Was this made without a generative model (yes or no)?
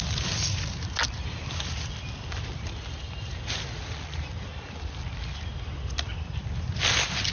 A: yes